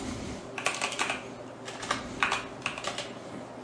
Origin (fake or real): real